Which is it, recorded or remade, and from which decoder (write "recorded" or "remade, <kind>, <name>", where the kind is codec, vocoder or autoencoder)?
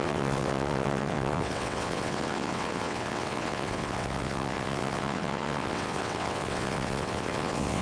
remade, vocoder, WaveNeXt